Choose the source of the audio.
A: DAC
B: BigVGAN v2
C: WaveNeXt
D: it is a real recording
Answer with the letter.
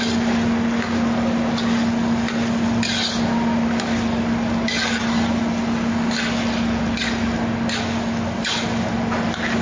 D